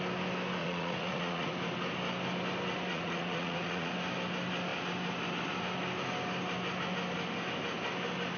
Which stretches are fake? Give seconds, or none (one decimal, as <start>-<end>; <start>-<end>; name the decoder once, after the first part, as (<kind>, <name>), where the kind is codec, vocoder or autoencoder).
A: 0.6-1.5 (vocoder, Vocos); 2.9-3.9